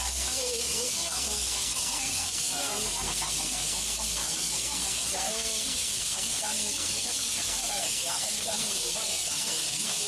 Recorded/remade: remade